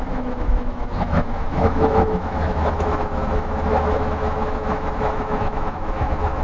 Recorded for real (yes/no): no